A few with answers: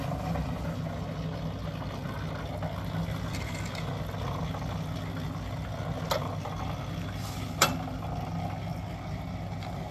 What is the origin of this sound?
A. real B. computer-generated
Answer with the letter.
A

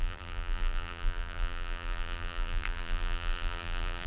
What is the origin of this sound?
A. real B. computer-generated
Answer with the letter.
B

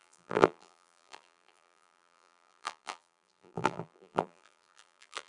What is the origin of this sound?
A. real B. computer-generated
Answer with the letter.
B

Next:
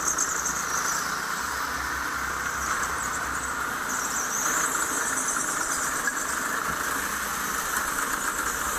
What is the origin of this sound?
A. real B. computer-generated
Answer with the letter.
A